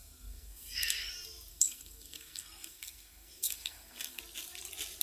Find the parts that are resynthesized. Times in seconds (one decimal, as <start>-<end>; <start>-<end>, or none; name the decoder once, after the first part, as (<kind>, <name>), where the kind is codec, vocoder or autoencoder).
0.0-1.1 (codec, SNAC); 1.5-4.2